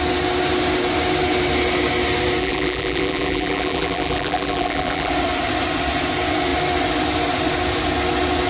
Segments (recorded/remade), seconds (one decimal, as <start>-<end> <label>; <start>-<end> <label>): 0.0-2.4 recorded; 2.4-5.1 remade; 5.1-8.5 recorded